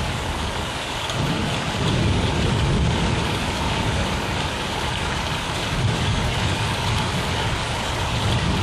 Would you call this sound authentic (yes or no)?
no